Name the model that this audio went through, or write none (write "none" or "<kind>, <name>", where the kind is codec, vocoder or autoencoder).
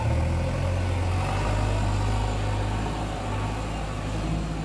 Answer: none